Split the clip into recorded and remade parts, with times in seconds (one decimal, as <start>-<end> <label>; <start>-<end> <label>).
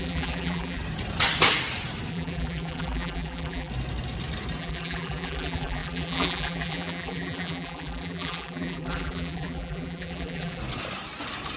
0.0-0.8 remade; 0.8-2.1 recorded; 2.1-3.7 remade; 3.7-4.6 recorded; 4.6-10.6 remade; 10.6-11.6 recorded